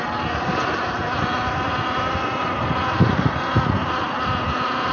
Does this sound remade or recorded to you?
recorded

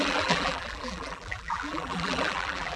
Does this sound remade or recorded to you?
remade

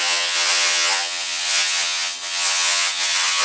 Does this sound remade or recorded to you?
remade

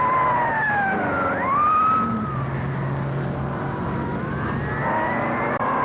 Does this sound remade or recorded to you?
recorded